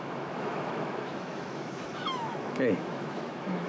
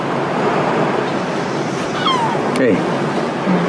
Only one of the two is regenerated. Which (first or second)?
first